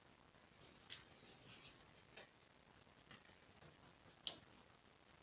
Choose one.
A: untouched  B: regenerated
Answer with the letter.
A